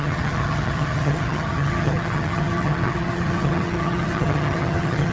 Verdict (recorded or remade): remade